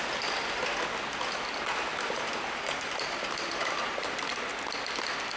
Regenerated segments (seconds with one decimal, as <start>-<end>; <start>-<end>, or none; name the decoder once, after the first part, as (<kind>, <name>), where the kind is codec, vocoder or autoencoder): 1.9-4.5 (vocoder, BigVGAN v2)